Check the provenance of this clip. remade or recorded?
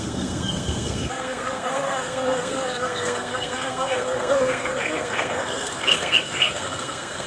remade